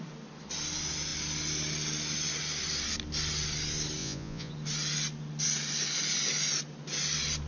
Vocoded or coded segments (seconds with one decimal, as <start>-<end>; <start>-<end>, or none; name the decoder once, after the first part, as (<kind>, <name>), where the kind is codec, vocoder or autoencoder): 4.0-4.5 (vocoder, Vocos)